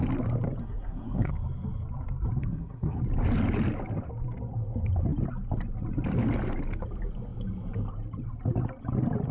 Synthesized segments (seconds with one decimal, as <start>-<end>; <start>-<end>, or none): 0.6-1.3; 2.4-3.0